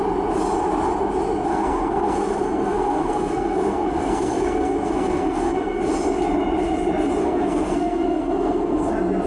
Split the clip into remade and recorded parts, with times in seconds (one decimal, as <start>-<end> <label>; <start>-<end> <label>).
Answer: 0.0-1.5 recorded; 1.5-5.8 remade; 5.8-7.2 recorded; 7.2-8.9 remade; 8.9-9.3 recorded